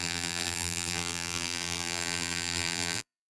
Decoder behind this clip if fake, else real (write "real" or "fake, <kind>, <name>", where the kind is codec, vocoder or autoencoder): fake, vocoder, BigVGAN v2